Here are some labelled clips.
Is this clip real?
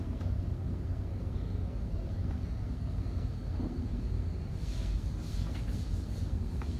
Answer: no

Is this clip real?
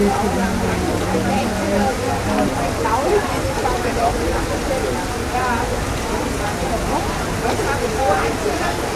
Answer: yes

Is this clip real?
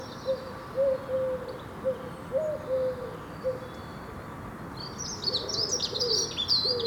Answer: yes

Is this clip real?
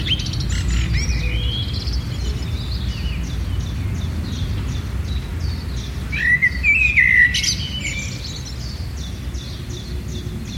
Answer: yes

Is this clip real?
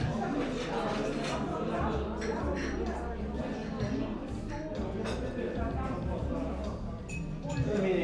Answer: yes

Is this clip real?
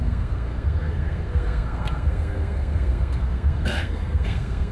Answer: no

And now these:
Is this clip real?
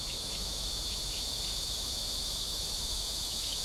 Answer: no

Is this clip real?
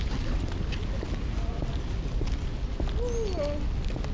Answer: yes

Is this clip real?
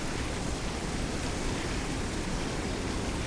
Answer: no